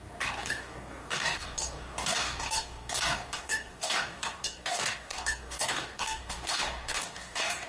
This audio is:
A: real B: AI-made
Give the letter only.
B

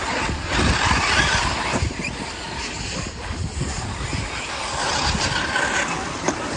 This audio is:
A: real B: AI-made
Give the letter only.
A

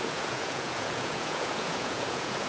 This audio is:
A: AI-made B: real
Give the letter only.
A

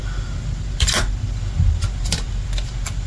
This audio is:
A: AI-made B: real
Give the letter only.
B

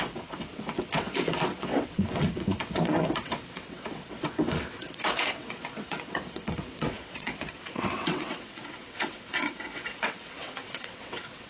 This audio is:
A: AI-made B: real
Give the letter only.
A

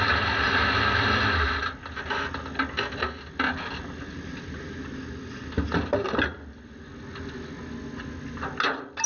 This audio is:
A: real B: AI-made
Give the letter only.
A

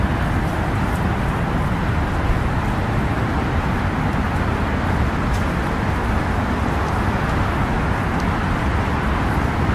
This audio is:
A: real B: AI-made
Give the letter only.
A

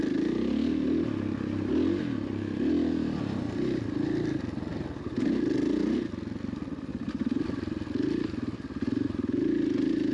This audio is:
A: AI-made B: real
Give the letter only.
B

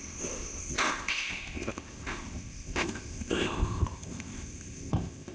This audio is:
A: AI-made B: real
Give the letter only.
A